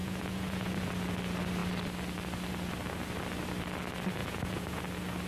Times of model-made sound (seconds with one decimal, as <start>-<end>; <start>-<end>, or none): 0.0-0.9; 4.2-4.8